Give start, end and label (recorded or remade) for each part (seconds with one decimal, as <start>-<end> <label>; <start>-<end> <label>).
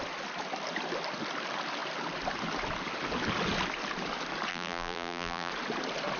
0.0-4.5 recorded; 4.5-5.5 remade; 5.5-6.2 recorded